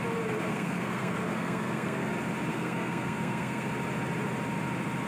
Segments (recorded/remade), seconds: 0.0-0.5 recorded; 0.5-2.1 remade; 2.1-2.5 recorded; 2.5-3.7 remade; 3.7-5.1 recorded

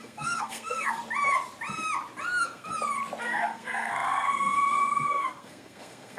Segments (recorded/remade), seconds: 0.0-1.0 remade; 1.0-2.3 recorded; 2.3-2.7 remade; 2.7-3.2 recorded; 3.2-6.2 remade

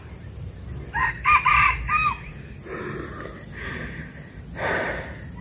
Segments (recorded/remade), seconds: 0.0-5.4 recorded

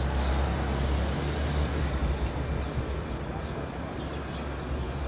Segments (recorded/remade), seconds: 0.0-5.1 recorded